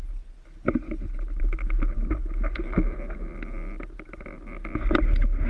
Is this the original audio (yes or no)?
yes